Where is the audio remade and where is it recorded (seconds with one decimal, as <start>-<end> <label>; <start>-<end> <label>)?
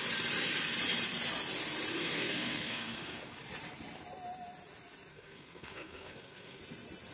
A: 0.0-2.0 recorded; 2.0-3.2 remade; 3.2-5.1 recorded; 5.1-6.6 remade; 6.6-7.1 recorded